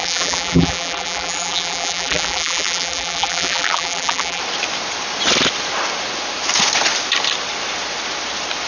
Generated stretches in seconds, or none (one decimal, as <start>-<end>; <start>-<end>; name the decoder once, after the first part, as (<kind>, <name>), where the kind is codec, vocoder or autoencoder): 0.0-4.4 (vocoder, BigVGAN v2)